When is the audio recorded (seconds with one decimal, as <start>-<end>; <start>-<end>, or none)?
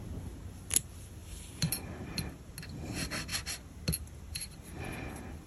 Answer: 0.0-5.5